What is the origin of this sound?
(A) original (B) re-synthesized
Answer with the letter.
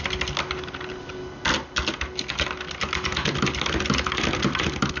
A